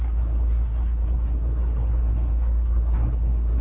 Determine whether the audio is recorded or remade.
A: remade